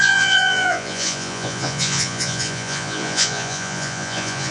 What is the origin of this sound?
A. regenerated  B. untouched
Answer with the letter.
A